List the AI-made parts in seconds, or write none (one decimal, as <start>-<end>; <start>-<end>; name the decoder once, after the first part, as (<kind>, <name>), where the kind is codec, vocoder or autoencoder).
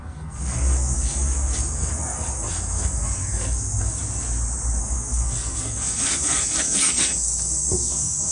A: 0.0-4.0 (codec, SNAC); 4.8-8.3